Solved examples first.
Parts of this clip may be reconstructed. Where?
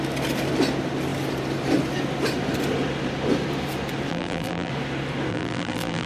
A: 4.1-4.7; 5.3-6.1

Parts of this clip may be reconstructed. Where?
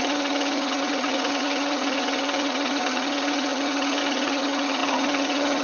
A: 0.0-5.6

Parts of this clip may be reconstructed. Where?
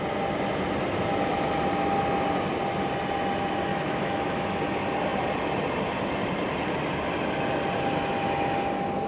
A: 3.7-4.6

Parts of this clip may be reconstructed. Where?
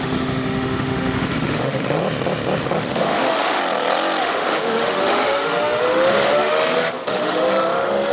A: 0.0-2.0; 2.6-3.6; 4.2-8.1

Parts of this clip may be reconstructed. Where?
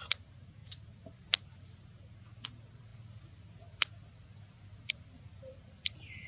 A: none